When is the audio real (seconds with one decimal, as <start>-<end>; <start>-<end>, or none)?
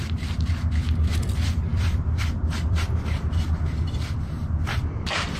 none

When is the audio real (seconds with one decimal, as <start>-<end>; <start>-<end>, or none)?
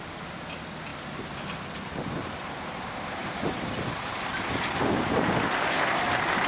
0.0-3.2; 4.0-6.5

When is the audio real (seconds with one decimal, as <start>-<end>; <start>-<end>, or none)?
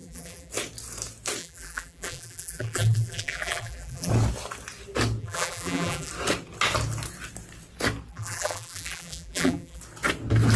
0.5-1.4; 4.1-5.2; 6.1-8.1; 9.8-10.6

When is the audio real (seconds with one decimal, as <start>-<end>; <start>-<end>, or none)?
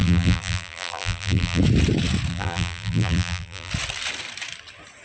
1.6-2.3; 3.7-5.0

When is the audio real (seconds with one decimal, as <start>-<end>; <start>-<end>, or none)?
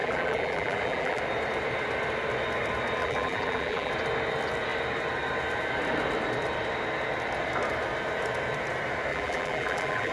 1.2-3.0; 3.9-9.1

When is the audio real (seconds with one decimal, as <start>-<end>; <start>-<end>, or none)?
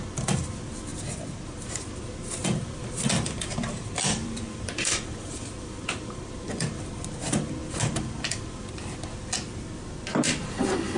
0.0-2.4; 6.9-11.0